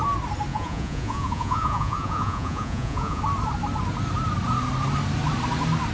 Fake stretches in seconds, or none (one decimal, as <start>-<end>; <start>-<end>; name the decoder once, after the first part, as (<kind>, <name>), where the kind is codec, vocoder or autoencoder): 0.5-3.2 (vocoder, Vocos)